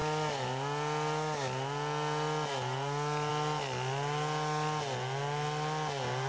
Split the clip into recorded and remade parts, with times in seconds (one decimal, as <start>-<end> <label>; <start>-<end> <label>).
0.0-6.3 recorded